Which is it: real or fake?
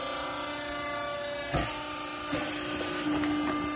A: real